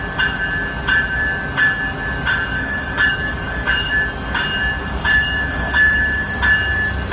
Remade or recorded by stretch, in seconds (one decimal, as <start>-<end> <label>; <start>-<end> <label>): 0.0-2.5 recorded; 2.5-3.9 remade; 3.9-4.8 recorded; 4.8-6.3 remade; 6.3-7.1 recorded